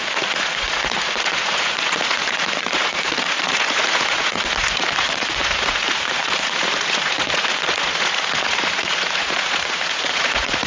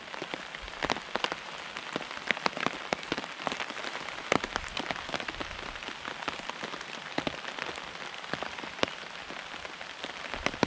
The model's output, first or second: first